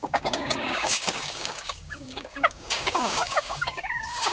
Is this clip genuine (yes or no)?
no